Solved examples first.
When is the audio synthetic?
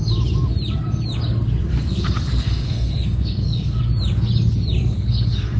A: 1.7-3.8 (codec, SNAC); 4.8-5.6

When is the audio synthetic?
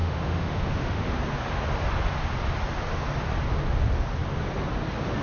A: 0.0-1.1 (autoencoder, DAC-VAE)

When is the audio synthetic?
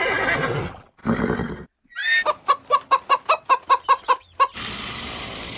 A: none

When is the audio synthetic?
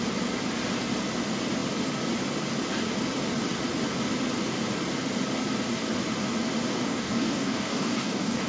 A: 6.7-8.5 (codec, DAC)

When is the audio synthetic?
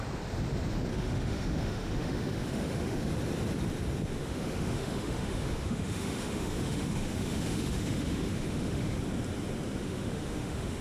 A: 0.9-3.1 (autoencoder, DAC-VAE); 4.2-9.0; 9.8-10.8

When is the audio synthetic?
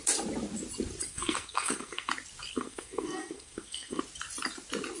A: 1.1-2.1 (codec, SNAC); 2.5-4.0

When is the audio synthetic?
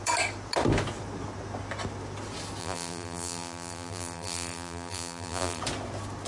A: 2.6-5.6 (vocoder, BigVGAN v2)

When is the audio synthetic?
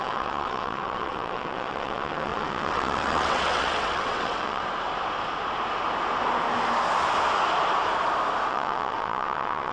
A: 0.0-4.6 (vocoder, WaveNeXt); 8.5-9.7